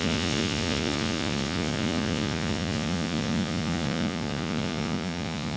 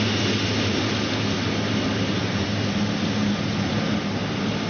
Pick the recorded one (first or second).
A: second